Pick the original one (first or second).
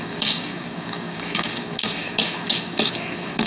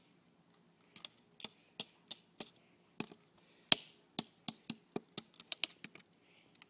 second